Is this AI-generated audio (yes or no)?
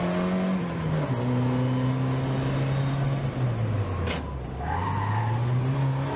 no